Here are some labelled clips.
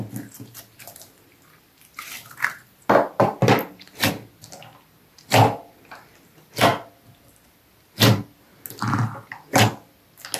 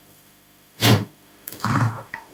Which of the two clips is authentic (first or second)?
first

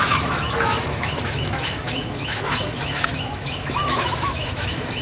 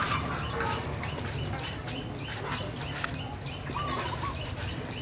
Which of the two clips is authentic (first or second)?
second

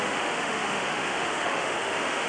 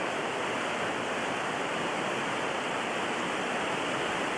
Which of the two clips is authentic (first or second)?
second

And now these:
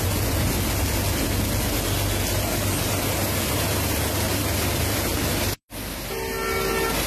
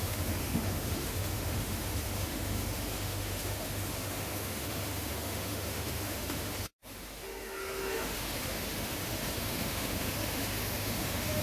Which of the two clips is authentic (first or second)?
first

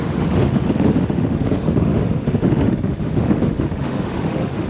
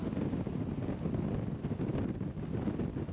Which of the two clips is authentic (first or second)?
second